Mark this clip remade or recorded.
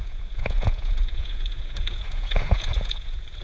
remade